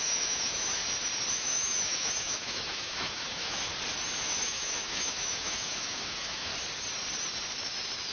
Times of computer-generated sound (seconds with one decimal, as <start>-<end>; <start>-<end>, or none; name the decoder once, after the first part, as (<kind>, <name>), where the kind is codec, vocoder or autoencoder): 0.0-0.8 (autoencoder, DAC-VAE); 1.3-3.7; 4.2-6.5